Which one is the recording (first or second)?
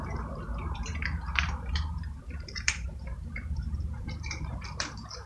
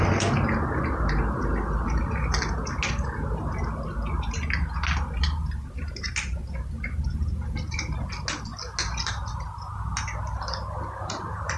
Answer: second